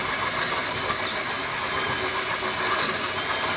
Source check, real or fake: real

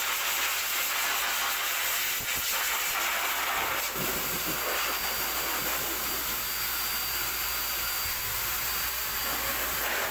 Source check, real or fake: real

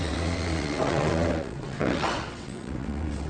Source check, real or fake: fake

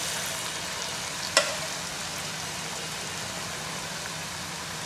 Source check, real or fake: real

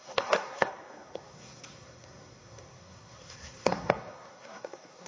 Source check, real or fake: fake